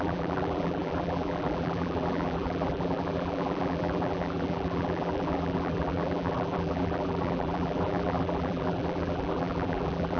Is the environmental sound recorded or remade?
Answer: remade